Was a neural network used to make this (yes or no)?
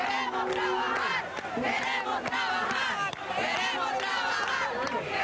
no